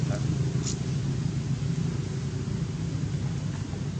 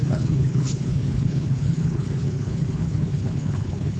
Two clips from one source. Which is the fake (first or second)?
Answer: second